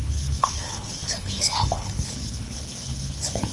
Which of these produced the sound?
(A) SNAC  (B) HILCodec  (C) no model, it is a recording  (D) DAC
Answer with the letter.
B